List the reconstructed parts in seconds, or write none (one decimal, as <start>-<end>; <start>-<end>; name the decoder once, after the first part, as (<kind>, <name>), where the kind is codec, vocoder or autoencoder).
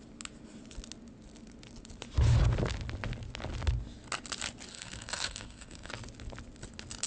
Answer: 4.7-5.9 (codec, SNAC)